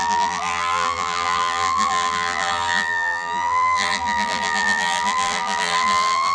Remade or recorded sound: remade